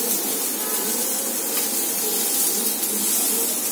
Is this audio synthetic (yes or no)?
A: yes